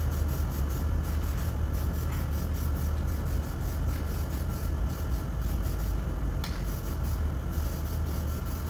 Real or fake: real